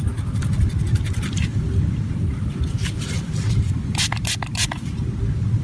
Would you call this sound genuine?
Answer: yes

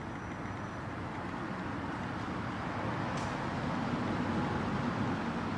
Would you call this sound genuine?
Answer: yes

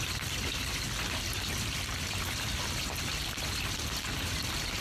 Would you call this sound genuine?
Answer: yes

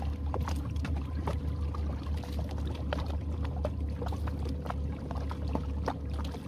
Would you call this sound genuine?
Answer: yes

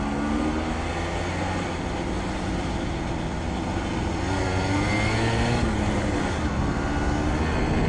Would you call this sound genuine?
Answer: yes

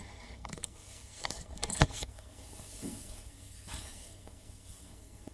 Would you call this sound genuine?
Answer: no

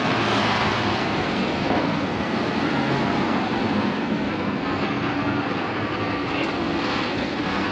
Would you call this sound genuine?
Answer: no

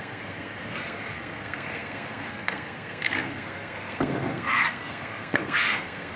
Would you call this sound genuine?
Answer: no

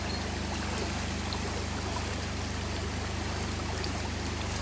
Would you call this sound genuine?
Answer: yes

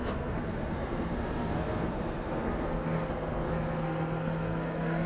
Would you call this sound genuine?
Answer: no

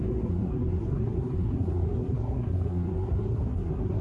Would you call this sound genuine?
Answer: no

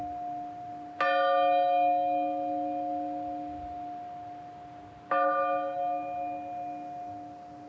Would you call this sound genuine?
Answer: yes